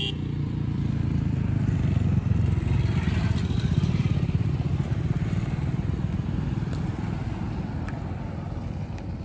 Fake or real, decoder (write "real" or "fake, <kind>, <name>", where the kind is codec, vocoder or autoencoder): real